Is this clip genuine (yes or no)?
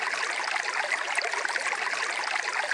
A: yes